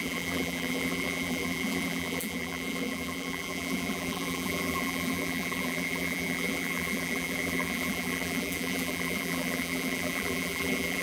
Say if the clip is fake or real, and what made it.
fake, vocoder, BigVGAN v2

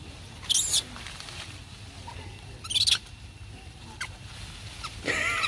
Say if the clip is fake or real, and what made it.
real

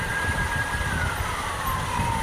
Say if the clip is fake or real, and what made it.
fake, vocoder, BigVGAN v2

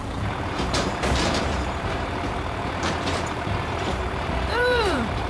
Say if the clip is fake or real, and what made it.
fake, vocoder, BigVGAN v2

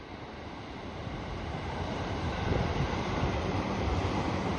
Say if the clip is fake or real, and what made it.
fake, vocoder, BigVGAN v2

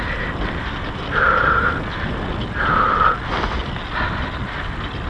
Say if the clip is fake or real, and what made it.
real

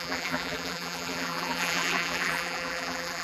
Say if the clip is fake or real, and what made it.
fake, vocoder, BigVGAN v2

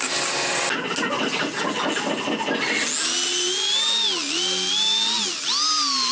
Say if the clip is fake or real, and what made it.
real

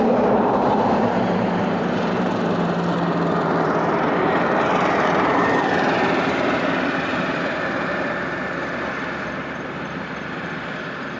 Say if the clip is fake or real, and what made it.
fake, vocoder, BigVGAN v2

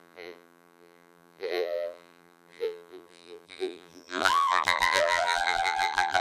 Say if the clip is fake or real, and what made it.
fake, vocoder, BigVGAN v2